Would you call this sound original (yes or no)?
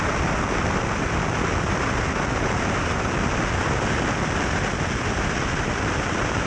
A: yes